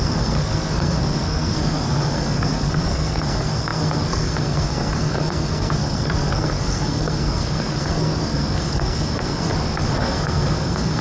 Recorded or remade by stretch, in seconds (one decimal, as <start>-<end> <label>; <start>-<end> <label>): 0.0-9.5 remade; 9.5-10.0 recorded; 10.0-11.0 remade